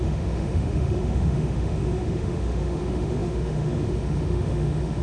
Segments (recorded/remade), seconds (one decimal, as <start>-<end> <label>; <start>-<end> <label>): 0.0-5.0 remade